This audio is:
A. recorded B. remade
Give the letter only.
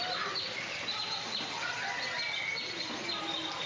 A